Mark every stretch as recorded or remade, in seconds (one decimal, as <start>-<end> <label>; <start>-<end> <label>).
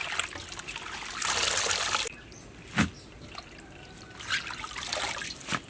0.0-5.7 recorded